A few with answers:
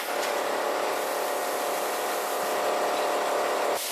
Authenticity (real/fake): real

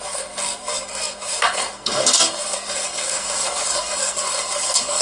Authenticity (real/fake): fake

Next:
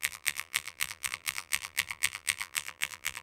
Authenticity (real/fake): fake